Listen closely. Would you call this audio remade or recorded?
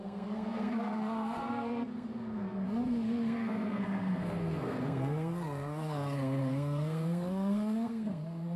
remade